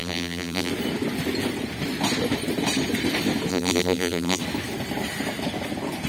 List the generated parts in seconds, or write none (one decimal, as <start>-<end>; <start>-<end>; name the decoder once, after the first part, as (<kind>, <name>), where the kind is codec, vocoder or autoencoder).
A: 0.0-0.7 (vocoder, BigVGAN v2); 3.5-4.4